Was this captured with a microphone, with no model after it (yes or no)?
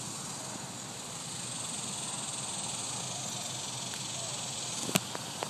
yes